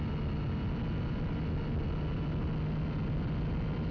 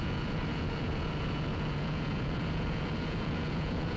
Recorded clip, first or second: first